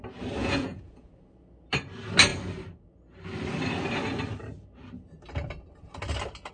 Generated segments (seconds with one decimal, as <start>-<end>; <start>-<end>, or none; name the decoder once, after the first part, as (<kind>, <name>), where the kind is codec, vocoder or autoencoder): 0.4-1.1 (vocoder, Vocos)